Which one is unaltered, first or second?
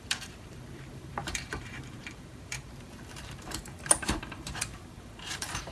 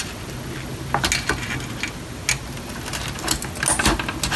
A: second